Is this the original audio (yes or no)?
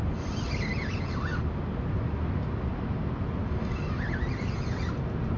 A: yes